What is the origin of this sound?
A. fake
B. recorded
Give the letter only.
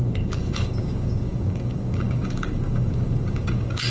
A